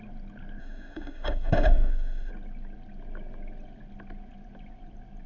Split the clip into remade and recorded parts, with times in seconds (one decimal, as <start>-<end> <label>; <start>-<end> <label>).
0.0-0.6 recorded; 0.6-2.3 remade; 2.3-5.3 recorded

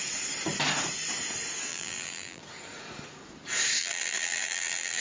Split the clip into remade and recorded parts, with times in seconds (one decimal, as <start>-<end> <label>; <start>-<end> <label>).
0.0-1.7 recorded; 1.7-2.4 remade; 2.4-3.8 recorded; 3.8-5.0 remade

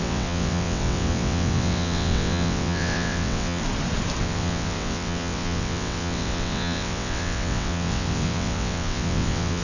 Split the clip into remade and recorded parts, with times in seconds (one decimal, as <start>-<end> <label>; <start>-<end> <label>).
0.0-3.6 remade; 3.6-4.2 recorded; 4.2-9.6 remade

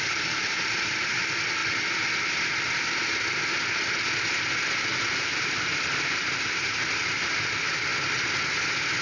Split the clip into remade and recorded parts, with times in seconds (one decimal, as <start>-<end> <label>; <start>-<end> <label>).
0.0-1.6 remade; 1.6-5.2 recorded; 5.2-7.9 remade; 7.9-9.0 recorded

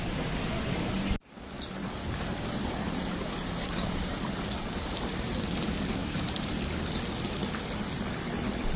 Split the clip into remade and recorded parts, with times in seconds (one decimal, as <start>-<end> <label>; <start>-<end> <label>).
0.0-1.8 recorded; 1.8-5.4 remade; 5.4-6.0 recorded; 6.0-6.5 remade; 6.5-8.8 recorded